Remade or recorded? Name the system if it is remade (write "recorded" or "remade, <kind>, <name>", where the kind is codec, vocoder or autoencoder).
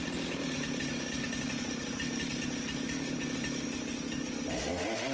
recorded